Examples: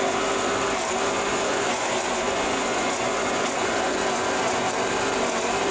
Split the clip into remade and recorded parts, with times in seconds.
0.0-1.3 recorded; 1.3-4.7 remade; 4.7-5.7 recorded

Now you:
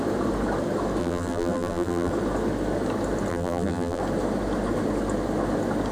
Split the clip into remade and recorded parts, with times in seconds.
0.0-1.0 recorded; 1.0-2.1 remade; 2.1-3.3 recorded; 3.3-4.0 remade; 4.0-5.9 recorded

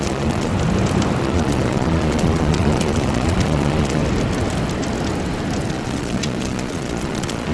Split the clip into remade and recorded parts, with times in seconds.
0.0-0.5 remade; 0.5-1.2 recorded; 1.2-4.0 remade; 4.0-5.7 recorded; 5.7-7.5 remade

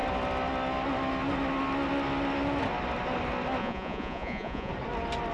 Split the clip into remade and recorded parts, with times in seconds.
0.0-3.6 recorded; 3.6-4.7 remade; 4.7-5.3 recorded